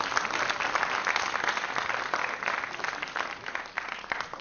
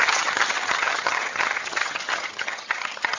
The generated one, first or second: second